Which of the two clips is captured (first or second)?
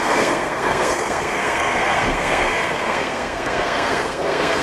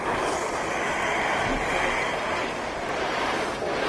second